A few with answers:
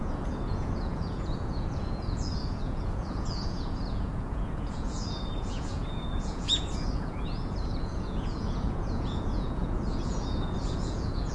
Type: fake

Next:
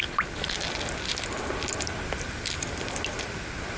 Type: real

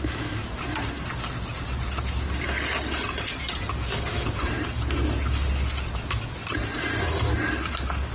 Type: real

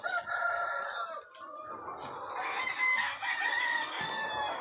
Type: real